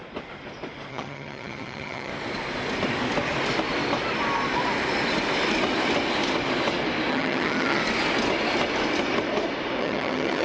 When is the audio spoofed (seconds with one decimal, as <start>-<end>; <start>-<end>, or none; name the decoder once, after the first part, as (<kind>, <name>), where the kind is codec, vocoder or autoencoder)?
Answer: 0.9-2.1 (vocoder, HiFi-GAN); 7.1-7.8; 9.8-10.4